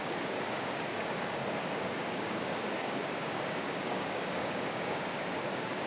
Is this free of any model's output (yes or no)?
no